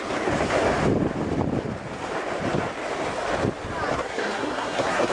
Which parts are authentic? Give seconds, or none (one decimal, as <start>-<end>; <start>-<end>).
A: 0.0-3.9